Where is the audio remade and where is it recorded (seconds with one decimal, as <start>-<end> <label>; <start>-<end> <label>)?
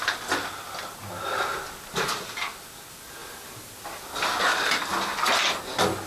0.0-6.1 recorded